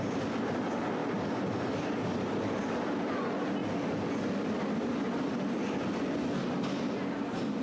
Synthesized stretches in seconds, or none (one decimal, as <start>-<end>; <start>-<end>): none